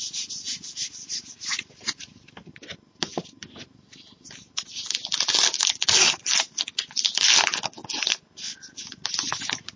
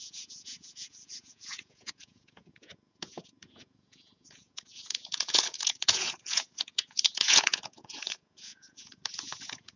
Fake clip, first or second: second